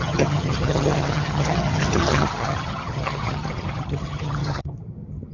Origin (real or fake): fake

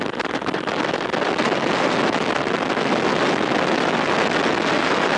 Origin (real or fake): real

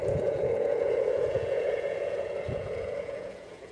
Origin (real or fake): fake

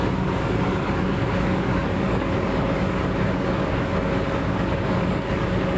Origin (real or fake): fake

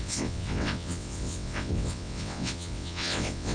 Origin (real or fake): fake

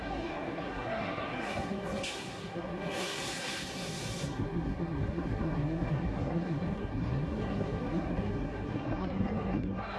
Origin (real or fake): fake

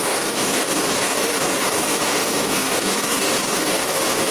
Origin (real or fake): fake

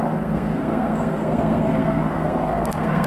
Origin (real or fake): fake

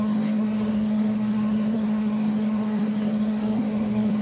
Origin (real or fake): fake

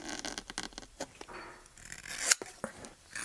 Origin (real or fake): real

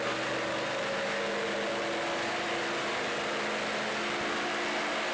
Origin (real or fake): real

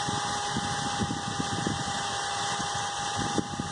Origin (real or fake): real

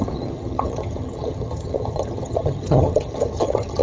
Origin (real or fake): fake